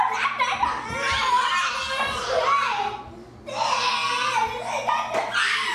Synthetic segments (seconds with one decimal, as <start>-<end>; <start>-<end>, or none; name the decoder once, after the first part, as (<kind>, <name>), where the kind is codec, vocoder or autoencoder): none